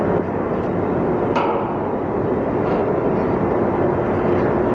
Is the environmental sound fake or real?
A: real